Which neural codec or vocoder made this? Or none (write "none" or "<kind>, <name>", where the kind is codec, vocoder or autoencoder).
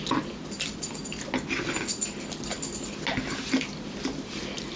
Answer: none